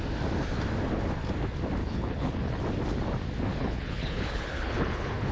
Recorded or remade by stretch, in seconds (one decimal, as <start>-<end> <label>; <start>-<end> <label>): 0.0-1.8 recorded; 1.8-2.6 remade; 2.6-3.5 recorded; 3.5-5.3 remade